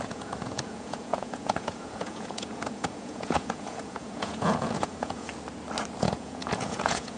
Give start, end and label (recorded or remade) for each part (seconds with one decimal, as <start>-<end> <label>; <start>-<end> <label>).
0.0-5.3 remade; 5.3-6.0 recorded; 6.0-7.2 remade